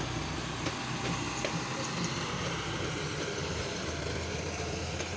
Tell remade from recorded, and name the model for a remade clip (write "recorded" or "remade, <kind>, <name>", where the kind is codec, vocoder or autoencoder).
recorded